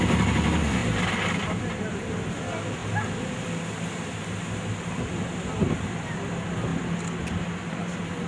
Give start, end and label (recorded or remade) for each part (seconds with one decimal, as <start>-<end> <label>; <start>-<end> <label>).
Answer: 0.0-8.3 recorded